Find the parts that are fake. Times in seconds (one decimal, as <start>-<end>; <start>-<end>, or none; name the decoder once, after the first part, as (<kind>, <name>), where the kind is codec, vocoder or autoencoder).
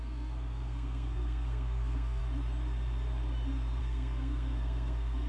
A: 0.0-2.2 (codec, SNAC); 3.8-5.3